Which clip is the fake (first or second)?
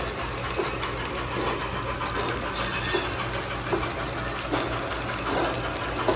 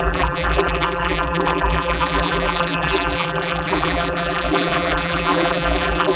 second